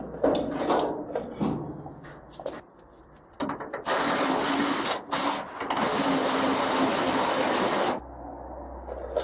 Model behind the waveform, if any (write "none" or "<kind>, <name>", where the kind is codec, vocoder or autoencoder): none